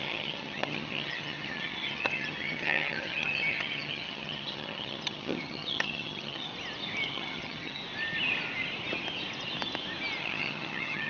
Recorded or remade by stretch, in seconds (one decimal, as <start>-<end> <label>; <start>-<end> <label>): 0.0-6.5 remade; 6.5-7.1 recorded; 7.1-7.8 remade; 7.8-10.2 recorded; 10.2-11.1 remade